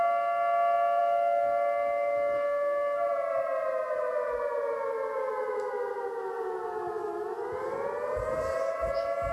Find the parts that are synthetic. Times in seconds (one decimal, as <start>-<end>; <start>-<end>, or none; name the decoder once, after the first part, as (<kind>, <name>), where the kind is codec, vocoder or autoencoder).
none